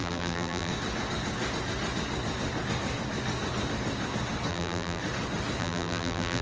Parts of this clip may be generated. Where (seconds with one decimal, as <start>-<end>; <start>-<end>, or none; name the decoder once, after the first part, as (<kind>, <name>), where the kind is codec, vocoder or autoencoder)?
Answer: 0.0-0.7 (vocoder, BigVGAN v2); 4.5-5.0; 5.6-6.4